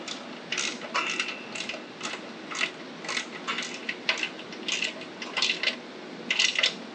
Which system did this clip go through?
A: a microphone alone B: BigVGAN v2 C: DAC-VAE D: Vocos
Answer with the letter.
A